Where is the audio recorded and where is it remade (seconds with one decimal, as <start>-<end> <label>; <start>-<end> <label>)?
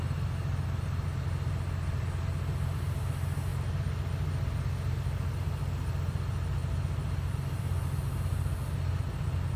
0.0-9.6 recorded